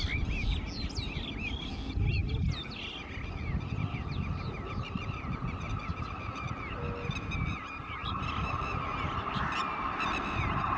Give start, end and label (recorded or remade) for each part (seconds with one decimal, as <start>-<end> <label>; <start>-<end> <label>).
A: 0.0-10.8 recorded